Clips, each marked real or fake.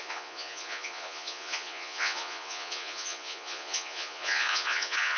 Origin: fake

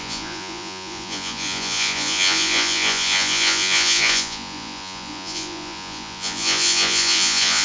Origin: fake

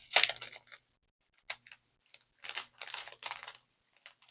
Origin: real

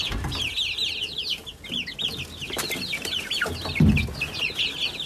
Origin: real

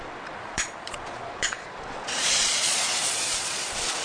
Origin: fake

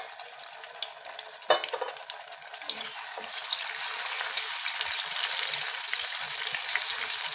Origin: real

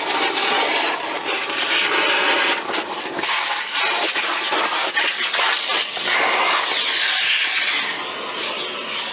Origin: real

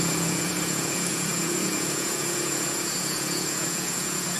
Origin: fake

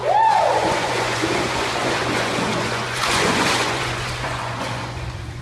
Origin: fake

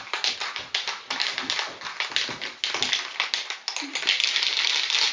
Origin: real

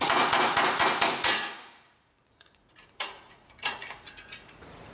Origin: fake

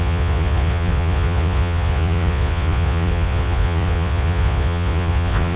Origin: fake